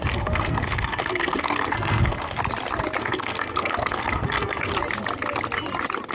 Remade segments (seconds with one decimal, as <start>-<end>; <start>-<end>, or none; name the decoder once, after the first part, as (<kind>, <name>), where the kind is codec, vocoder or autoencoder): 0.0-2.4 (codec, SNAC); 3.0-4.7